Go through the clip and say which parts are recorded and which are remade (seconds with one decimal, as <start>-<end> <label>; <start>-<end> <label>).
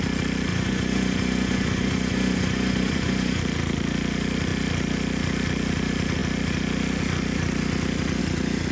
0.0-0.5 recorded; 0.5-3.4 remade; 3.4-8.7 recorded